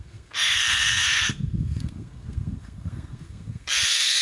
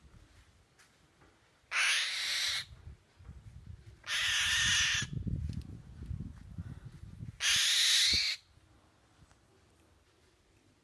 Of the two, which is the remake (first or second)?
first